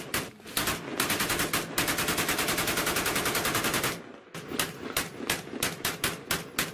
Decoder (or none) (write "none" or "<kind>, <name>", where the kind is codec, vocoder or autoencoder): vocoder, BigVGAN v2